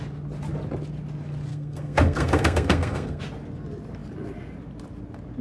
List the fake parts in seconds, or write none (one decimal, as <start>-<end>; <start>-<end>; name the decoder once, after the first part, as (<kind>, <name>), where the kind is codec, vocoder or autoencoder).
1.5-3.2 (codec, SNAC)